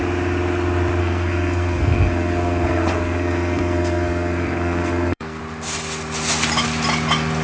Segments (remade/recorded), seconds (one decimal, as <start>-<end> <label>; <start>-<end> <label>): 0.0-1.0 recorded; 1.0-5.4 remade; 5.4-7.4 recorded